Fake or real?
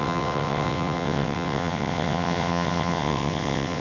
fake